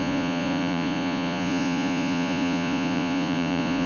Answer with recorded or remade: remade